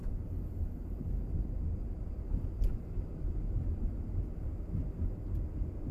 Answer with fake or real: real